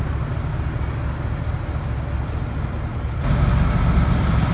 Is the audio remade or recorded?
recorded